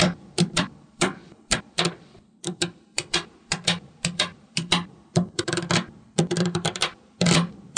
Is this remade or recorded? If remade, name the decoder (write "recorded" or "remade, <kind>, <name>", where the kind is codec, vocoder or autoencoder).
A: remade, vocoder, BigVGAN v2